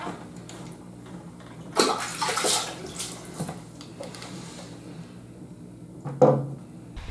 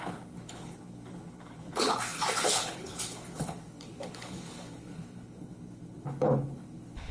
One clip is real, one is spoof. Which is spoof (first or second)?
second